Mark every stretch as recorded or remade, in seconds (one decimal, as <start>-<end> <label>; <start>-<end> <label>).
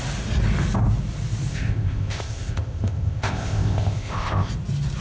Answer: 0.0-1.5 recorded; 1.5-4.5 remade; 4.5-5.0 recorded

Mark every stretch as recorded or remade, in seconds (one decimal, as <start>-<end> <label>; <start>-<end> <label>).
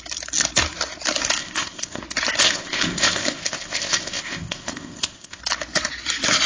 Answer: 0.0-1.4 recorded; 1.4-2.0 remade; 2.0-2.4 recorded; 2.4-5.4 remade; 5.4-6.5 recorded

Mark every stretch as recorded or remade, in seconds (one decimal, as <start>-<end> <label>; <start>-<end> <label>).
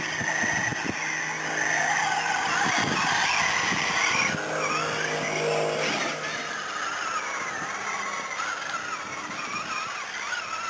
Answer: 0.0-10.7 recorded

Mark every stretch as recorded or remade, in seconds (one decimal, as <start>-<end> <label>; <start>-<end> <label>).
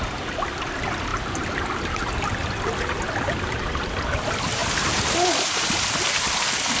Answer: 0.0-6.8 recorded